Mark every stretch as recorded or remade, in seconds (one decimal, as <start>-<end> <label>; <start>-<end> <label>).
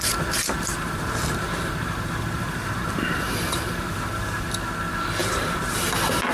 0.0-0.7 recorded; 0.7-4.5 remade; 4.5-5.2 recorded; 5.2-5.8 remade; 5.8-6.3 recorded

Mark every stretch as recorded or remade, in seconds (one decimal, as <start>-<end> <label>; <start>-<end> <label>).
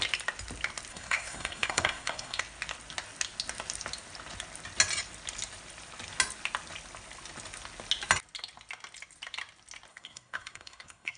0.0-0.9 recorded; 0.9-2.4 remade; 2.4-9.9 recorded; 9.9-11.2 remade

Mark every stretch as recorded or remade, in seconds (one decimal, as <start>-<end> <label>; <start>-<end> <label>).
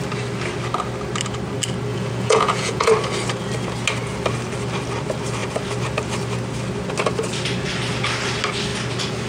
0.0-1.9 recorded; 1.9-2.9 remade; 2.9-9.3 recorded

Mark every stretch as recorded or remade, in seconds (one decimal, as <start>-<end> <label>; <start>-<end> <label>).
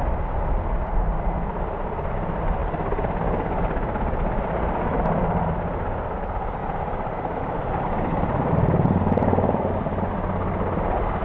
0.0-2.6 recorded; 2.6-3.2 remade; 3.2-6.6 recorded; 6.6-8.5 remade; 8.5-11.2 recorded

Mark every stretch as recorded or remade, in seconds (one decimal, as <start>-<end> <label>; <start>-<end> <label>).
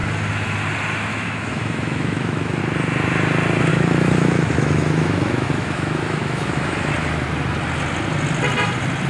0.0-1.1 recorded; 1.1-2.6 remade; 2.6-3.7 recorded; 3.7-6.9 remade; 6.9-9.1 recorded